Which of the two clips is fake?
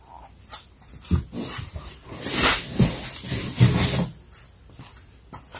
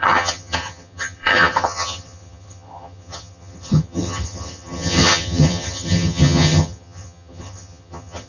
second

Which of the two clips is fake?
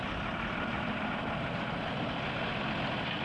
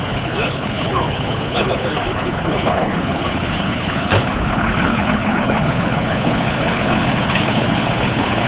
second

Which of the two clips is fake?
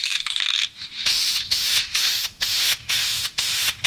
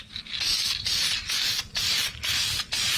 first